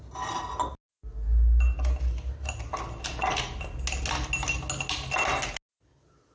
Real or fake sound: real